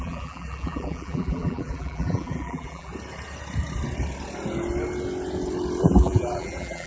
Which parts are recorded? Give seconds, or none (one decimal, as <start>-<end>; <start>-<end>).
2.9-5.8

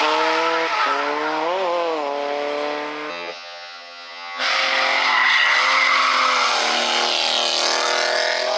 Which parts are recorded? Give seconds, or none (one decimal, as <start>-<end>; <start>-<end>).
0.0-3.1; 4.4-8.6